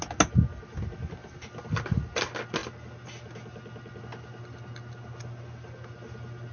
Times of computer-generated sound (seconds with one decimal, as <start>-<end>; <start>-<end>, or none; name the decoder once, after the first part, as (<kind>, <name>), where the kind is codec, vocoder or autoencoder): none